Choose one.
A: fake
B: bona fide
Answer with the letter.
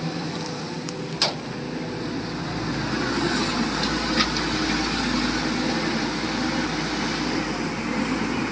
B